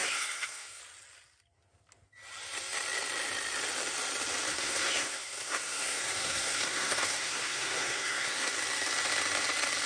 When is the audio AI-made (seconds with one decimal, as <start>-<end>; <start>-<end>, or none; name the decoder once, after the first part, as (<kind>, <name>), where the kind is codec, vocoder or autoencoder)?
0.0-0.8 (codec, SNAC); 4.5-8.5